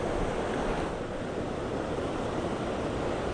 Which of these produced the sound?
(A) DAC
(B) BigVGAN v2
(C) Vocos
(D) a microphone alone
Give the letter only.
D